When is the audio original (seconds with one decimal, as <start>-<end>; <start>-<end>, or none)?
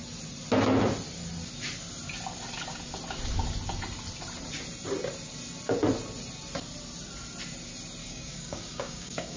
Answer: 0.0-8.0